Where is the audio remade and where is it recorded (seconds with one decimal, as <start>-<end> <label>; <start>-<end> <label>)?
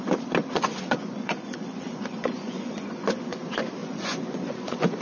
0.0-0.4 recorded; 0.4-3.4 remade; 3.4-3.8 recorded; 3.8-5.0 remade